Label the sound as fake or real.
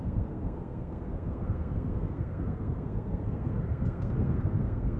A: fake